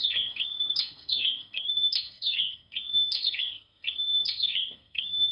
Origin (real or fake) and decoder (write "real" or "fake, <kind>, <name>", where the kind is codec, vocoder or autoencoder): fake, codec, SNAC